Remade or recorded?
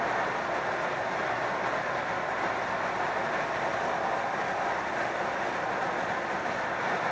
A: recorded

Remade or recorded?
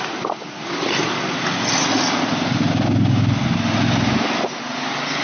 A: recorded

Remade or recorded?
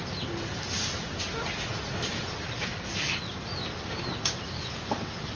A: recorded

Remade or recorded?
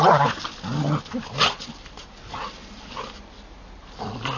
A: recorded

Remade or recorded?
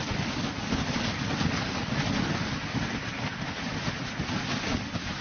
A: recorded